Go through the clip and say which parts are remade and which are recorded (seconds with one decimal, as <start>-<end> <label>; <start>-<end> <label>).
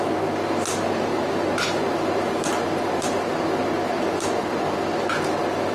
0.0-5.7 recorded